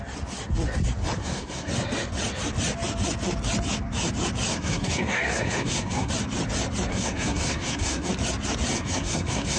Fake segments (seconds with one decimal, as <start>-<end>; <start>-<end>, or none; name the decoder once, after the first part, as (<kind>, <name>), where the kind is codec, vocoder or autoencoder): 1.2-1.7 (codec, SNAC); 4.5-6.1; 6.9-8.1; 8.7-9.6